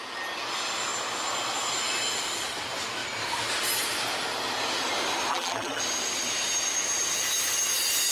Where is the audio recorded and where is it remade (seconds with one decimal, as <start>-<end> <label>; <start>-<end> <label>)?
0.0-5.3 recorded; 5.3-5.8 remade; 5.8-8.1 recorded